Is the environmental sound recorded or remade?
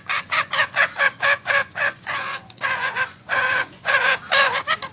remade